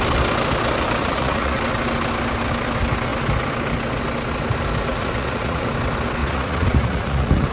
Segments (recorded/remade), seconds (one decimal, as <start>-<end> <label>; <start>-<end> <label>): 0.0-1.0 recorded; 1.0-1.6 remade; 1.6-4.9 recorded; 4.9-5.7 remade; 5.7-6.2 recorded; 6.2-7.5 remade